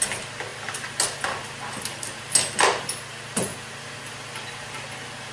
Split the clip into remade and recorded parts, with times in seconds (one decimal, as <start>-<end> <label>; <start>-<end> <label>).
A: 0.0-5.3 recorded